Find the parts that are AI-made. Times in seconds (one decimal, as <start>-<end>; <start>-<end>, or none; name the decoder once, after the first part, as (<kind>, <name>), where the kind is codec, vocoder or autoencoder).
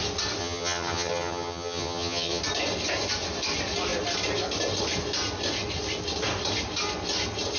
0.4-2.4 (vocoder, HiFi-GAN)